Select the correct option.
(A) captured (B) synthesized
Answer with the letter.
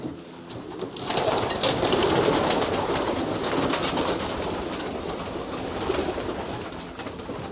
A